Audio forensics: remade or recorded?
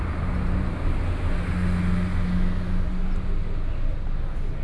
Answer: recorded